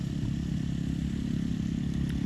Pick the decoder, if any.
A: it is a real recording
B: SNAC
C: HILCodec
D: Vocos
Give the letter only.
A